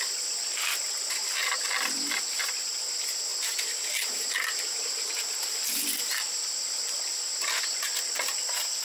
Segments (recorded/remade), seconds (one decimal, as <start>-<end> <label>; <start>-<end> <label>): 0.0-1.4 remade; 1.4-2.6 recorded; 2.6-3.3 remade; 3.3-7.6 recorded; 7.6-8.8 remade